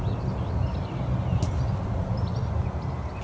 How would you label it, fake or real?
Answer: real